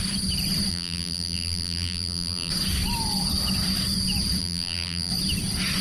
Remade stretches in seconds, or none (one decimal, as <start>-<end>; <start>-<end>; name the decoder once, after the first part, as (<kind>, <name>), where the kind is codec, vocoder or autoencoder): 0.7-2.5 (vocoder, BigVGAN v2); 4.4-5.1